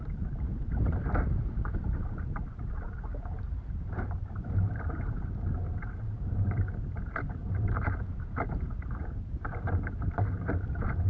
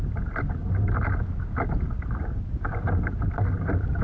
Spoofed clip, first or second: first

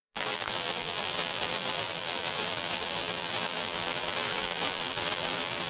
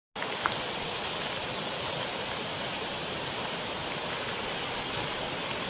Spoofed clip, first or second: first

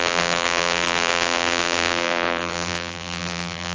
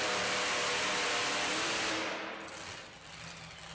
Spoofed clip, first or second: first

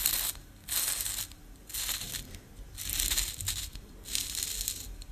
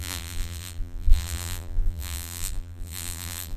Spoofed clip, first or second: second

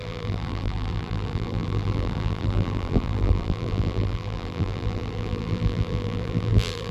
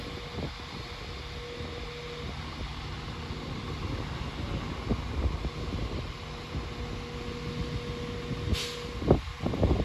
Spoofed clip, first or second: first